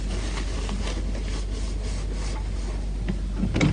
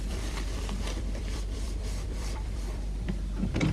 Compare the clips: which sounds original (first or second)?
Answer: first